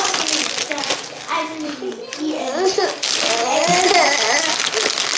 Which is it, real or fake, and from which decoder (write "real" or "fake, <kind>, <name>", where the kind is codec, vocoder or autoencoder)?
real